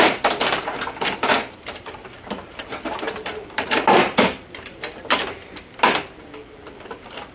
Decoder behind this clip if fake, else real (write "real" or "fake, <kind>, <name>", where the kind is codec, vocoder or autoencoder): fake, vocoder, BigVGAN v2